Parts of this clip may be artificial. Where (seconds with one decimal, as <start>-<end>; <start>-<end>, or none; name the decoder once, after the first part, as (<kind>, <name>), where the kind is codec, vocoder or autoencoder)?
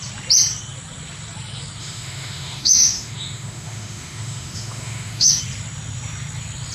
1.8-5.4 (autoencoder, DAC-VAE)